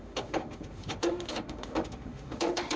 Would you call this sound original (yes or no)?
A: no